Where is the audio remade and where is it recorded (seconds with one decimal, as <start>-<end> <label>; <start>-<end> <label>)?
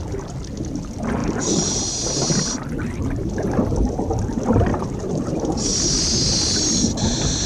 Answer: 0.0-1.2 recorded; 1.2-1.8 remade; 1.8-4.7 recorded; 4.7-5.6 remade; 5.6-7.5 recorded